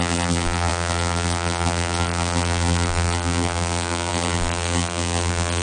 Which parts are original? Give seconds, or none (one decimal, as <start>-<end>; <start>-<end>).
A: none